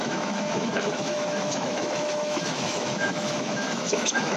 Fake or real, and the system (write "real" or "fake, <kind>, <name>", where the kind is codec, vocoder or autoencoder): fake, autoencoder, DAC-VAE